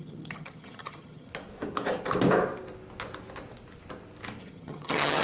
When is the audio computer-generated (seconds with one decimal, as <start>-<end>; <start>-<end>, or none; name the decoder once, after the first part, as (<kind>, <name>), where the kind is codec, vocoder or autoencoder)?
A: 0.0-1.3 (vocoder, HiFi-GAN); 4.4-5.2